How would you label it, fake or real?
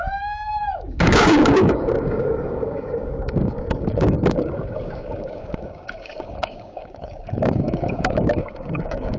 fake